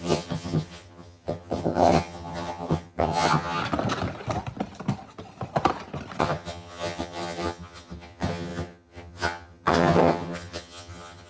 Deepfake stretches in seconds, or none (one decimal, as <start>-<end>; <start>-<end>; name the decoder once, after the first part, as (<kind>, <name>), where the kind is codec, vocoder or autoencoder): 0.0-3.6 (vocoder, HiFi-GAN); 6.2-11.3